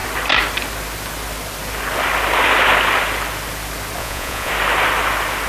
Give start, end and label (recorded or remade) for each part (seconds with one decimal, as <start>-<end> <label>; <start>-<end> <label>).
0.0-4.0 recorded; 4.0-4.5 remade; 4.5-5.5 recorded